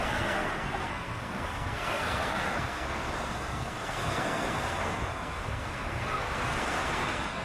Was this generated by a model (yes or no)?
yes